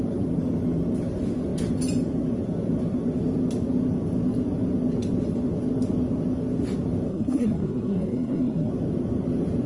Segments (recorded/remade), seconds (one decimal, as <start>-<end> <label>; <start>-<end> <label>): 0.0-7.1 recorded; 7.1-8.7 remade; 8.7-9.7 recorded